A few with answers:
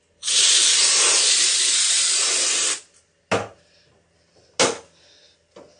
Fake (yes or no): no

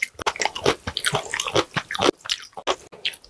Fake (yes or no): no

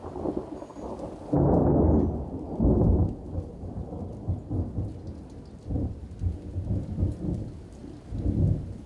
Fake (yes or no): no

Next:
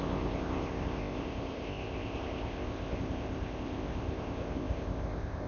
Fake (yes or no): yes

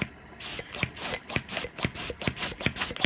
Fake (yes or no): no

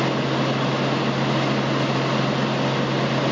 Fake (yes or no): no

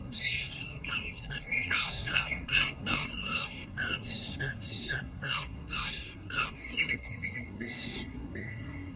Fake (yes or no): yes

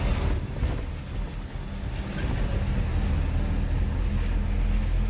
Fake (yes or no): no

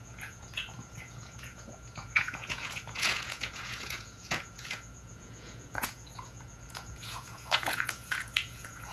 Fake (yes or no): yes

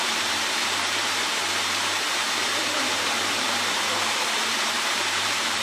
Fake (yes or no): yes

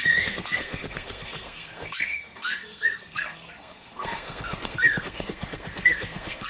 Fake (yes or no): yes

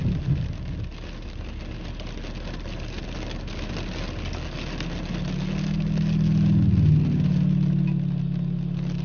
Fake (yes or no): no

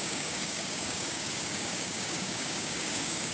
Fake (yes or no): yes